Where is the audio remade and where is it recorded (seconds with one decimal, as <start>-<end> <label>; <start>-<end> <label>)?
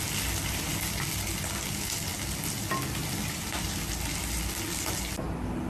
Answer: 0.0-5.7 recorded